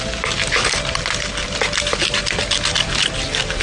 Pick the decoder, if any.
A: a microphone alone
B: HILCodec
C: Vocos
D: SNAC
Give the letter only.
A